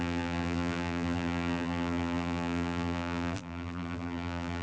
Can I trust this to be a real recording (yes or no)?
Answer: no